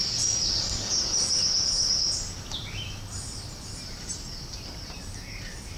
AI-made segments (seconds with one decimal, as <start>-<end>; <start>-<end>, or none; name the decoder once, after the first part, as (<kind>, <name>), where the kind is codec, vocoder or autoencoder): none